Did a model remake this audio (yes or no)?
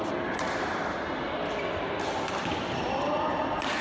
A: no